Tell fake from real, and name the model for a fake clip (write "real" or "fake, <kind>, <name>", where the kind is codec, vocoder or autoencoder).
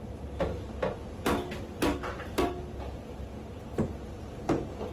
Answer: real